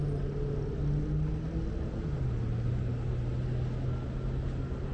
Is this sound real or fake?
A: real